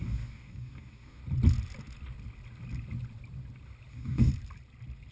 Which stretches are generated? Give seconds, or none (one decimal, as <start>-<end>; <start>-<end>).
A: 0.0-1.2; 3.9-4.3